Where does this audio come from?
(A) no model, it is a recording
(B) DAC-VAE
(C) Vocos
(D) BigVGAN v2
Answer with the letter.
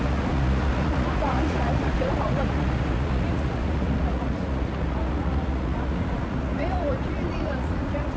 C